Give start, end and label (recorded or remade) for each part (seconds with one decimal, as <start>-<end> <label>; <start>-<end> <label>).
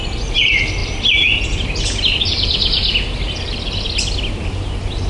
0.0-5.1 recorded